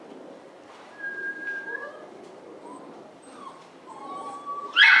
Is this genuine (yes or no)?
no